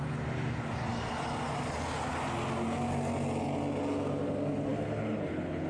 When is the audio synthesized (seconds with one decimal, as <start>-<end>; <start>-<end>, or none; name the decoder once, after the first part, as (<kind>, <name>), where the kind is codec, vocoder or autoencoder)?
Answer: 4.7-5.7 (codec, HILCodec)